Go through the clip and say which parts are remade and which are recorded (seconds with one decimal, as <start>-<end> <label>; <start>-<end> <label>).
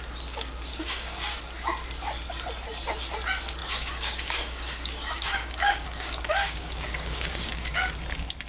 0.0-0.7 recorded; 0.7-1.4 remade; 1.4-3.6 recorded; 3.6-7.9 remade; 7.9-8.5 recorded